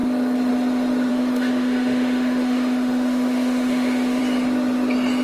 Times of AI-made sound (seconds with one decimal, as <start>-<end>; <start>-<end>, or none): 1.1-4.2